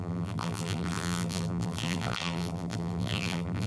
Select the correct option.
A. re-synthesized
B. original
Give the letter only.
A